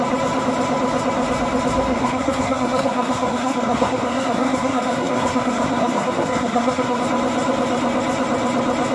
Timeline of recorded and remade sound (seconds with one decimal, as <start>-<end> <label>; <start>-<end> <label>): 0.0-1.9 recorded; 1.9-7.0 remade; 7.0-8.9 recorded